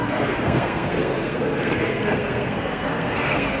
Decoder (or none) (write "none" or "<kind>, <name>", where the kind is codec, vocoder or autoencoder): codec, SNAC